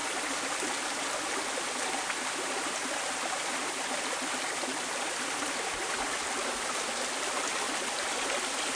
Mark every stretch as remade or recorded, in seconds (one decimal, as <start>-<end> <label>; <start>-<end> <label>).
0.0-8.7 recorded